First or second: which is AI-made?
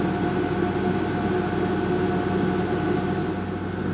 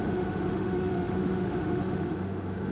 second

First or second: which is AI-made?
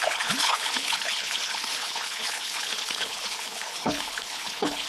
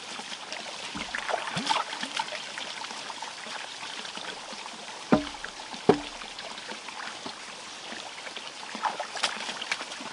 first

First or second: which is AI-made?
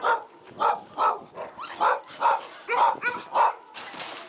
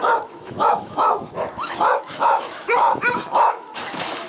second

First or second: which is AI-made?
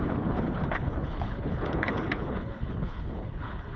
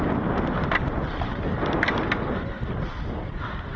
first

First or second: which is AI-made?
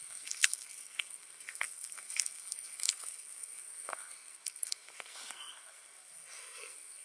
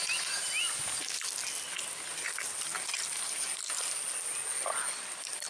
first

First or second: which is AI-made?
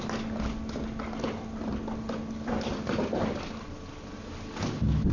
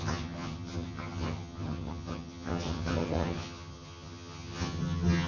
second